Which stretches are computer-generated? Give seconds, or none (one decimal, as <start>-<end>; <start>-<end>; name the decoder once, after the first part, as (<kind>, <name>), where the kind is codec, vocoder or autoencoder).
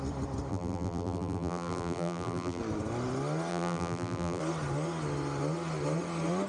0.5-2.6 (vocoder, BigVGAN v2); 3.5-4.4